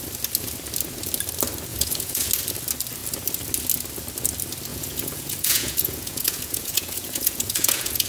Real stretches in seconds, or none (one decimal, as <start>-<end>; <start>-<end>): 0.0-1.7; 2.3-4.7